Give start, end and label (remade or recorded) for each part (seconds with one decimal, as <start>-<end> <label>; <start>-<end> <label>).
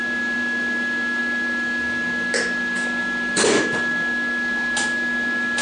0.0-5.6 recorded